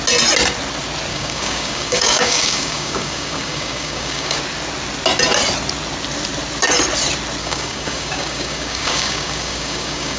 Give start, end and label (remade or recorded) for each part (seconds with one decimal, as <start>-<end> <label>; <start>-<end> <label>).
0.0-1.1 recorded; 1.1-4.4 remade; 4.4-7.4 recorded; 7.4-10.2 remade